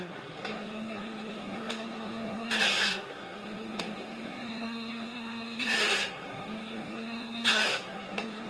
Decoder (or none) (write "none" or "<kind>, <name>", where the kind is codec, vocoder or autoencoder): codec, SNAC